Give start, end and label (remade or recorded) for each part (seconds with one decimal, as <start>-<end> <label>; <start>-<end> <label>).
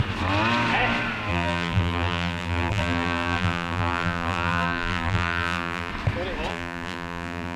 0.0-1.3 recorded; 1.3-5.9 remade; 5.9-6.5 recorded; 6.5-7.6 remade